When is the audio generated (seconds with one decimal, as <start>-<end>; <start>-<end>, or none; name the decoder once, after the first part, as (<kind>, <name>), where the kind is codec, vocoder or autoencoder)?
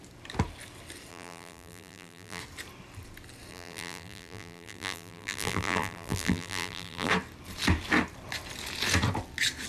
1.1-2.4 (vocoder, BigVGAN v2); 3.5-7.1